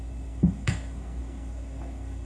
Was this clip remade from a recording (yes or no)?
yes